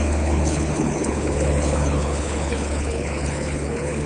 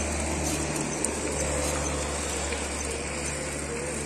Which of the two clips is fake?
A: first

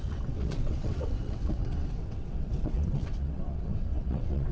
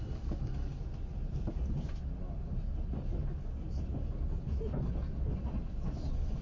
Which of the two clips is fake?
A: first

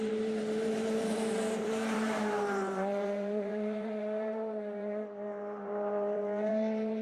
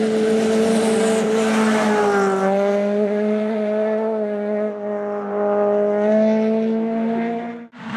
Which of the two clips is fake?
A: first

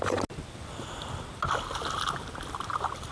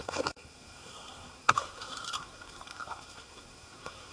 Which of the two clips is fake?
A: second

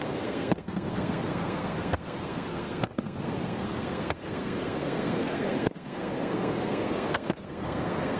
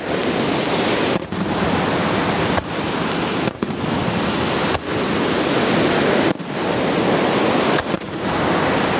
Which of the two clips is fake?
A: first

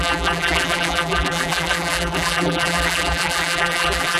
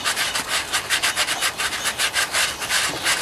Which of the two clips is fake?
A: first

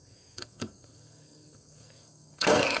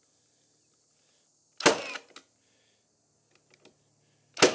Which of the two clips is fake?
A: first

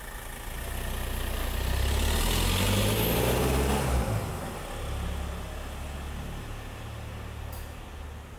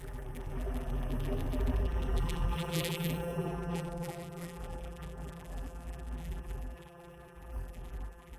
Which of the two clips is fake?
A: second